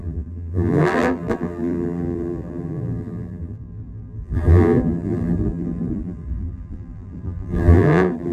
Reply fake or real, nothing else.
fake